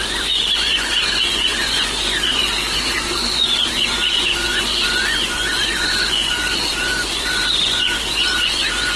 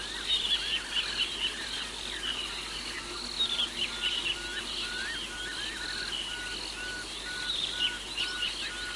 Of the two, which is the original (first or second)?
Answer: second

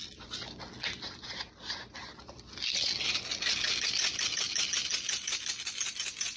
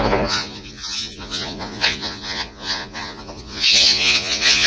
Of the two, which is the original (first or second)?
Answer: first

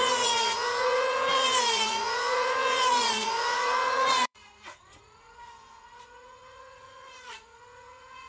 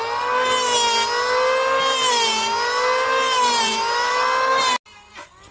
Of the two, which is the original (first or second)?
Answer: second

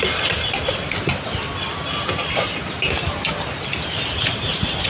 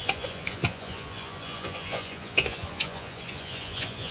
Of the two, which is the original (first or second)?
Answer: first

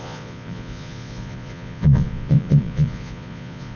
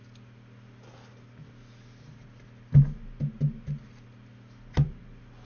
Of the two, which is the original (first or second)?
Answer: second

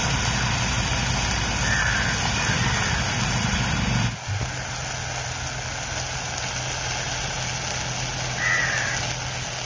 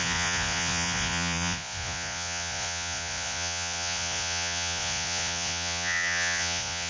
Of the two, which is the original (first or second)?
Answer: first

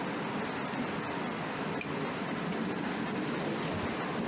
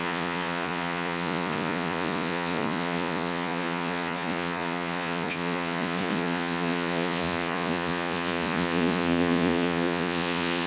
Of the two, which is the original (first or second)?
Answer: first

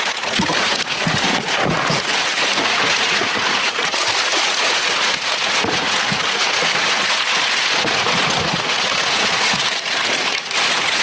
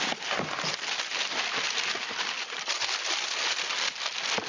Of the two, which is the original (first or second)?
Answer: second